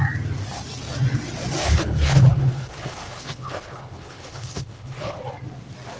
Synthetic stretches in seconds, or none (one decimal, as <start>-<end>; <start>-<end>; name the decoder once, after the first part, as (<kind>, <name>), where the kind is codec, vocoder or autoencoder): 1.6-5.2 (codec, HILCodec)

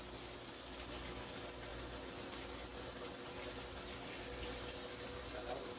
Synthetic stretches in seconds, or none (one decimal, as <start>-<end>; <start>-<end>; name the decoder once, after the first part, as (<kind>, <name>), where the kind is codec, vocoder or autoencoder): none

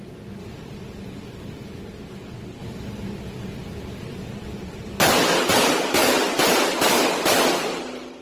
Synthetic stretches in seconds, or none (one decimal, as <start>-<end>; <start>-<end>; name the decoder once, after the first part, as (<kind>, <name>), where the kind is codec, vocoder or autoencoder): 0.4-1.8 (vocoder, BigVGAN v2); 2.6-5.0; 6.0-6.8